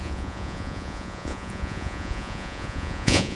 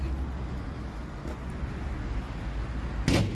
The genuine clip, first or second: second